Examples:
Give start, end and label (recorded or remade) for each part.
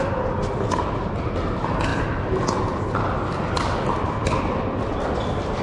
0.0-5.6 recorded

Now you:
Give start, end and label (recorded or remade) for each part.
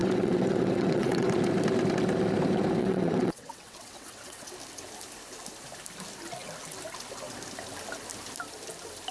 0.0-1.3 remade; 1.3-2.8 recorded; 2.8-4.5 remade; 4.5-9.1 recorded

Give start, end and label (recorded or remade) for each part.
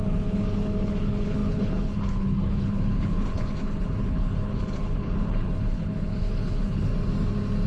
0.0-6.9 remade; 6.9-7.7 recorded